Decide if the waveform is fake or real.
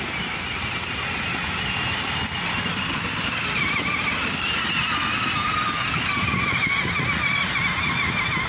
real